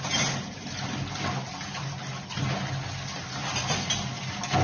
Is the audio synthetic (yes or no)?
no